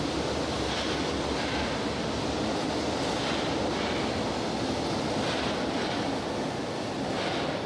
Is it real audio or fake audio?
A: real